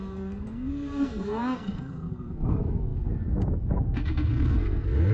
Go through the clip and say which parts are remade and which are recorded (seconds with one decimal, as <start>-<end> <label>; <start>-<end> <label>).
0.0-5.1 remade